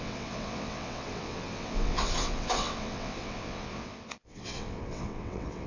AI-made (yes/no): yes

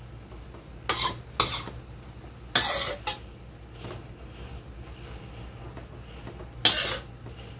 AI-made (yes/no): no